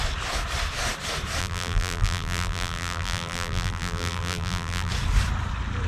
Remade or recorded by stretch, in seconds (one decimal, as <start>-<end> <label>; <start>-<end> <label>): 0.0-1.4 recorded; 1.4-4.9 remade; 4.9-5.9 recorded